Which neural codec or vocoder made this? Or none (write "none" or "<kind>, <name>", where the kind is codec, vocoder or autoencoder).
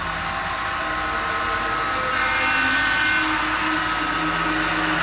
none